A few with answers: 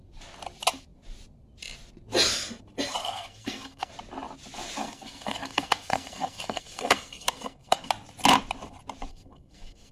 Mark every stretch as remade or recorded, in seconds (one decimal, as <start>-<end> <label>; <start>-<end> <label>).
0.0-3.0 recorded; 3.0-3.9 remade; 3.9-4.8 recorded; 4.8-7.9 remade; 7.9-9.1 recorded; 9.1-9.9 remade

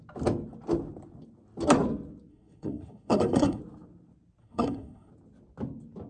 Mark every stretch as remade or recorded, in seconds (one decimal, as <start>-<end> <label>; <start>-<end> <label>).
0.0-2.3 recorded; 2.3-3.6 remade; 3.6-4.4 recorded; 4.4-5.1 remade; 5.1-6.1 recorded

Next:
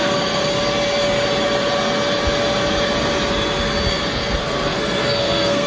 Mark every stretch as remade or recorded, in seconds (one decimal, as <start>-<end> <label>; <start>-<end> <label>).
0.0-0.5 remade; 0.5-3.9 recorded; 3.9-5.7 remade

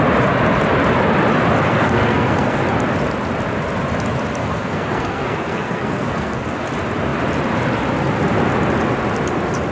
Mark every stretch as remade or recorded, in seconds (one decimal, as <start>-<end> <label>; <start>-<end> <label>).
0.0-1.7 recorded; 1.7-2.6 remade; 2.6-4.4 recorded; 4.4-6.4 remade; 6.4-9.7 recorded